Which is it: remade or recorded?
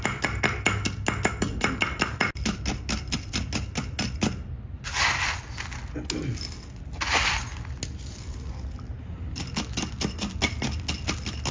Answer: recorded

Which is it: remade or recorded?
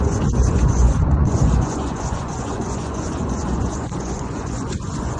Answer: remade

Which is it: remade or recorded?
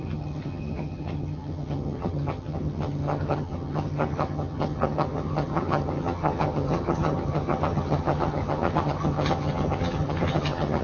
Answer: remade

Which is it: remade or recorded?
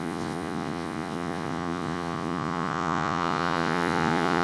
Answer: remade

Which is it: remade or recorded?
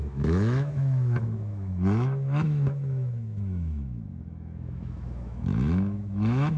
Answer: remade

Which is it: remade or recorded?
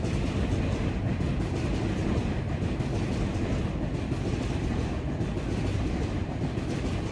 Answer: recorded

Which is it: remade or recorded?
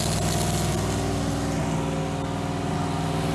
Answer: recorded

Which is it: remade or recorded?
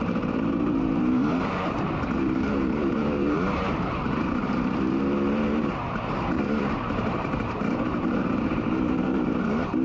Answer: remade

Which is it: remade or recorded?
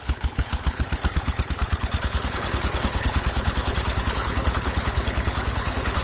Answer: remade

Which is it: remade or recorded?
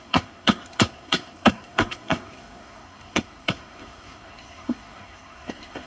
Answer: remade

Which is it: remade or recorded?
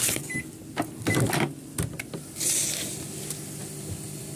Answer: recorded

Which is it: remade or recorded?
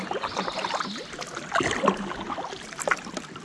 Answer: recorded